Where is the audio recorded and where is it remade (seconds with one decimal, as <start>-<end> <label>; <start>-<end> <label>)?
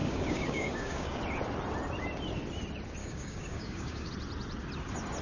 0.0-1.2 remade; 1.2-3.0 recorded; 3.0-4.1 remade; 4.1-5.2 recorded